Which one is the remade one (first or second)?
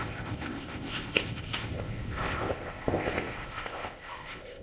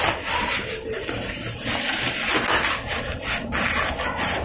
first